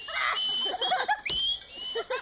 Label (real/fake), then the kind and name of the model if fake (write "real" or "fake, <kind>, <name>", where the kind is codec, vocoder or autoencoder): real